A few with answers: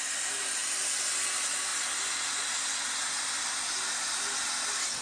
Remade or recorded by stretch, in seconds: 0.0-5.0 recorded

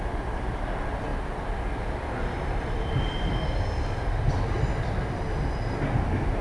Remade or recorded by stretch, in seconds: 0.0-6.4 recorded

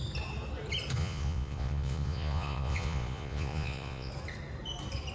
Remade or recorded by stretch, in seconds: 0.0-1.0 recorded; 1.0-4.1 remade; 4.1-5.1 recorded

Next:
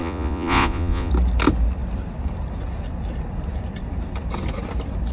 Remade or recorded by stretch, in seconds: 0.0-1.1 remade; 1.1-5.1 recorded